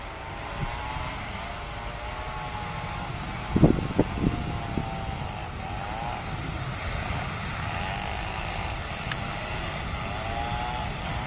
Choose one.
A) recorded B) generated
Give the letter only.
A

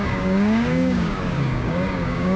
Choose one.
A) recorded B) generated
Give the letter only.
B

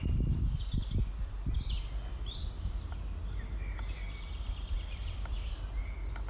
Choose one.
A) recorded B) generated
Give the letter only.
A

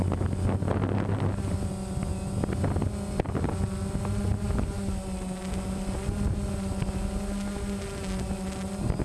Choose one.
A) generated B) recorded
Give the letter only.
B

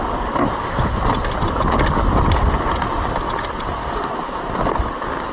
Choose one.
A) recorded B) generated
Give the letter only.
A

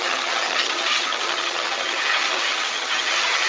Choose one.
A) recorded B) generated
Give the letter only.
B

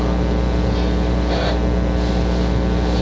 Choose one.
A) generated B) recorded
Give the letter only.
B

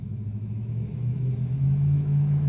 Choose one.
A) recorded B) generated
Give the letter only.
B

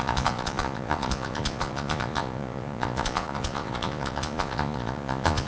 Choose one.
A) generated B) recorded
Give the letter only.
A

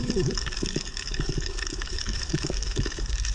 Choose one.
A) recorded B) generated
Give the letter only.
B